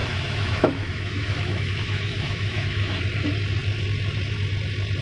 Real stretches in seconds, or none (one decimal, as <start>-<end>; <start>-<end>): 3.0-5.0